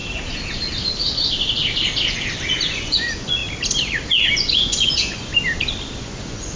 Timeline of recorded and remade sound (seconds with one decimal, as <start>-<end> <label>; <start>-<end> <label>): 0.0-2.5 recorded; 2.5-3.4 remade; 3.4-4.1 recorded; 4.1-5.3 remade; 5.3-6.0 recorded; 6.0-6.6 remade